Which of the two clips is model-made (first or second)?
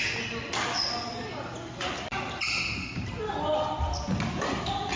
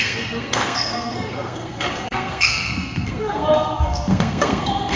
second